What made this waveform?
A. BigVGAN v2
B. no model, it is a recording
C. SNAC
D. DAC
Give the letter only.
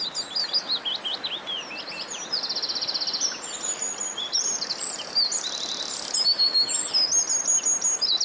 B